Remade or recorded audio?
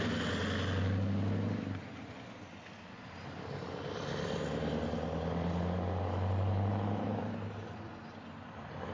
recorded